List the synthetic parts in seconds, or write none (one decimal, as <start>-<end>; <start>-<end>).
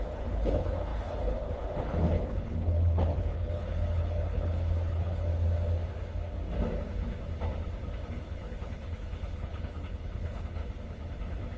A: 0.0-5.3; 8.1-10.6